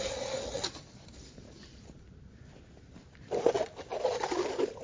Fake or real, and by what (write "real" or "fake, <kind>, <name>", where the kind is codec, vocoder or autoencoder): real